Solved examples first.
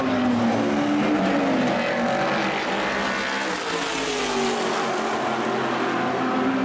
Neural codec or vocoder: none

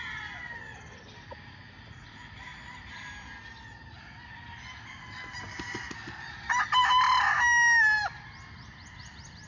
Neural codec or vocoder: none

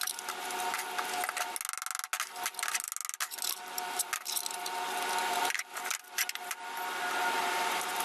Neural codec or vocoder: none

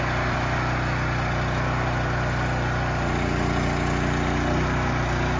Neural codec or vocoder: none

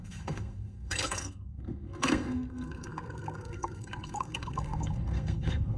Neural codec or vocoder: codec, SNAC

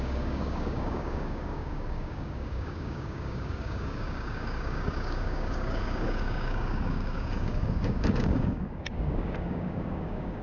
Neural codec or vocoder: codec, DAC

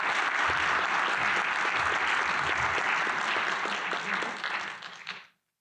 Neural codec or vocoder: none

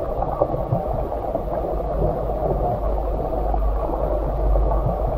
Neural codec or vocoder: none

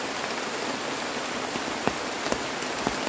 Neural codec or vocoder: none